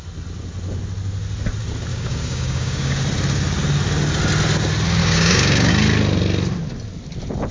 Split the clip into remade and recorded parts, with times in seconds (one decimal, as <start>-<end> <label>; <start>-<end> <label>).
0.0-1.9 recorded; 1.9-3.0 remade; 3.0-5.0 recorded; 5.0-5.7 remade; 5.7-7.5 recorded